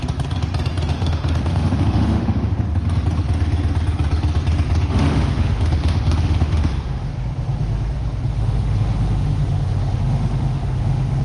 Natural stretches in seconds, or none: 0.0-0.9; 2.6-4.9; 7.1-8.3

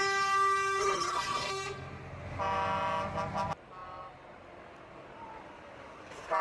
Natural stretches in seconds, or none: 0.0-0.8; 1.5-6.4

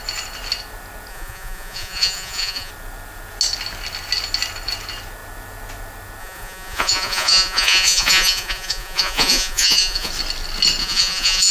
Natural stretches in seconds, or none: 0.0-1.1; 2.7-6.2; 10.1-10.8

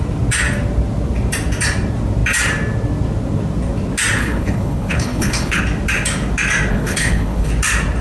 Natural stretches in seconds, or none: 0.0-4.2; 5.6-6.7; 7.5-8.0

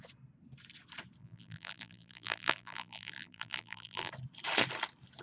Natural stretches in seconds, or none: 0.0-1.2; 4.1-5.2